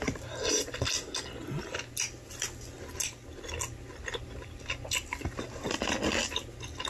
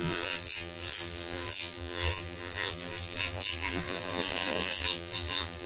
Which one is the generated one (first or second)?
second